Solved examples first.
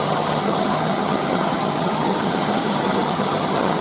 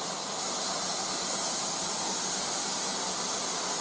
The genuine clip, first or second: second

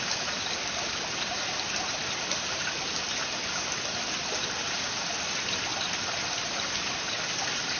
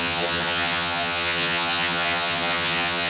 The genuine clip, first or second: first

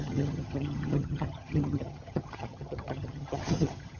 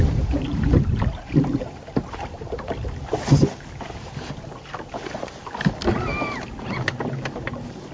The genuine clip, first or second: second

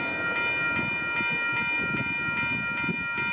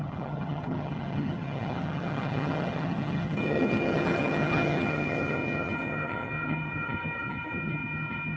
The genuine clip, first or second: first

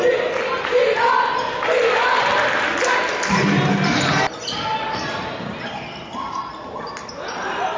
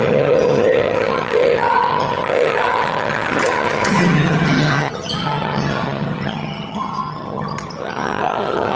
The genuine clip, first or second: first